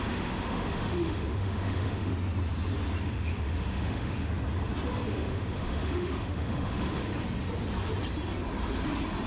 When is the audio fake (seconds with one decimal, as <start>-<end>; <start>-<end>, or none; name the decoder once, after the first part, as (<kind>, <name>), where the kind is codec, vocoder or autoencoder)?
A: 0.0-2.1 (autoencoder, DAC-VAE); 3.0-4.3; 5.1-7.1